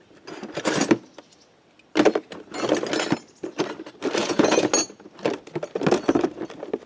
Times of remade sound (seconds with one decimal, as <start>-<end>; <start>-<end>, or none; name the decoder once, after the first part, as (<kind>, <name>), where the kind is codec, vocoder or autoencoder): 4.2-4.7 (vocoder, Vocos)

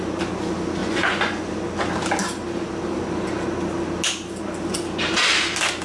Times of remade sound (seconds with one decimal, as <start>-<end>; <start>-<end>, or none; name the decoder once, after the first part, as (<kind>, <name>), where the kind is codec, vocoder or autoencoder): 0.8-1.5 (vocoder, Vocos)